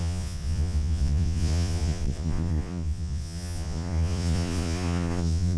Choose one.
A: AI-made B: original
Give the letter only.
A